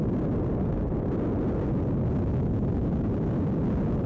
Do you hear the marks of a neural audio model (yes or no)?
no